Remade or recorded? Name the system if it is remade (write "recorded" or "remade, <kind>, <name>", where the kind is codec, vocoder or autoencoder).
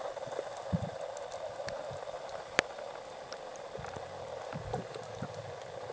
recorded